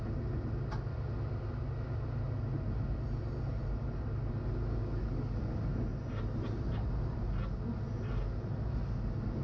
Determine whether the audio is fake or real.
real